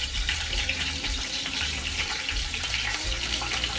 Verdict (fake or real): fake